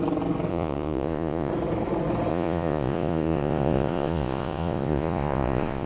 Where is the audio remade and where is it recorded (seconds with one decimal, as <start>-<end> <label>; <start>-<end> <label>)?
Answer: 0.0-0.5 recorded; 0.5-1.5 remade; 1.5-2.3 recorded; 2.3-5.9 remade